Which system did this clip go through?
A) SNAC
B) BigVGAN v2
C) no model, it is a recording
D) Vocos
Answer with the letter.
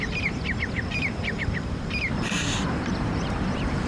B